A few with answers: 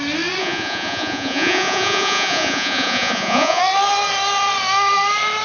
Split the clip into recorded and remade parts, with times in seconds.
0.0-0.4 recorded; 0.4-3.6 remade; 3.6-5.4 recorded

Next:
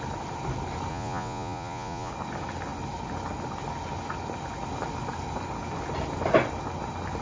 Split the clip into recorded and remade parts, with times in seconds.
0.0-0.9 recorded; 0.9-2.1 remade; 2.1-7.2 recorded

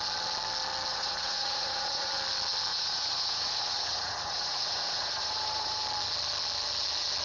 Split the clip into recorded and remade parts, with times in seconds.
0.0-0.9 recorded; 0.9-2.1 remade; 2.1-2.7 recorded; 2.7-5.8 remade; 5.8-7.2 recorded

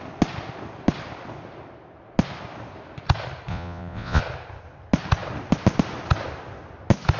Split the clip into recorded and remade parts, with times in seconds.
0.0-3.5 recorded; 3.5-4.2 remade; 4.2-7.2 recorded